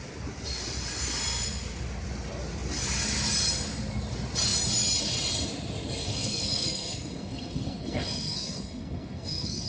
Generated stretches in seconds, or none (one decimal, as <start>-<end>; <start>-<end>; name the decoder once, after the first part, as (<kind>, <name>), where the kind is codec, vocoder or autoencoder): 6.0-9.7 (codec, SNAC)